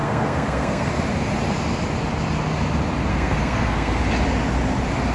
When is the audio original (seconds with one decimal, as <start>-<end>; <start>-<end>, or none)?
0.9-3.1; 4.0-5.1